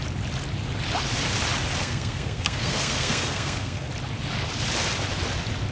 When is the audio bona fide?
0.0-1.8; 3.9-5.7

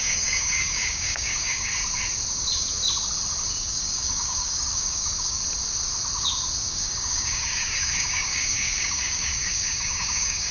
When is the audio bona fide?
1.7-3.5; 5.4-6.7